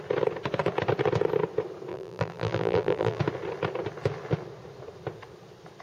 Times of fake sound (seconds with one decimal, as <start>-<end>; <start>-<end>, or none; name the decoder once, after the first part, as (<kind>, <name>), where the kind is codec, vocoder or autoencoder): 1.9-3.2 (vocoder, BigVGAN v2)